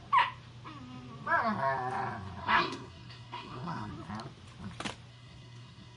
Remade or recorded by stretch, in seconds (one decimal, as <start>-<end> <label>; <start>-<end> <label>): 0.0-2.4 recorded; 2.4-3.9 remade; 3.9-5.1 recorded; 5.1-6.0 remade